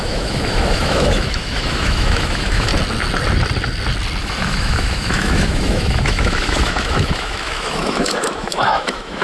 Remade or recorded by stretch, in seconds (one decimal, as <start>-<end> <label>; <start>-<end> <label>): 0.0-2.7 remade; 2.7-4.2 recorded; 4.2-9.2 remade